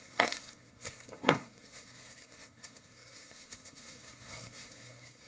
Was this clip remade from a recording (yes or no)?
yes